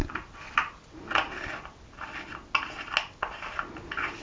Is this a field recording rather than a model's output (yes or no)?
yes